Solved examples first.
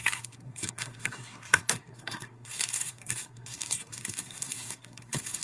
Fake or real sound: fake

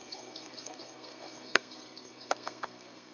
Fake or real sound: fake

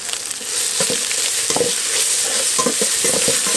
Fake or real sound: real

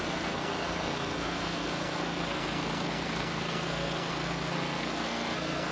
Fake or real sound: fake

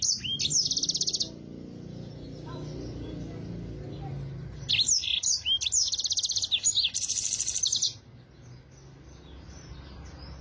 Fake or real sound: real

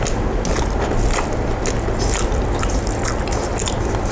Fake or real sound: real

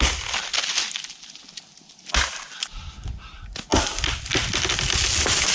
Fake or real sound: real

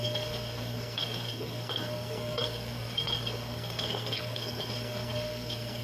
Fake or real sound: fake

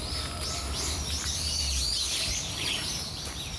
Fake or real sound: real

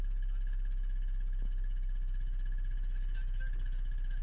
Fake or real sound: real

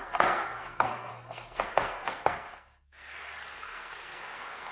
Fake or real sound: fake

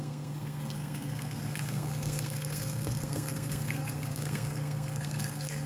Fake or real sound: fake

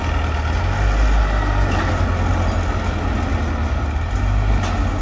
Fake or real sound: real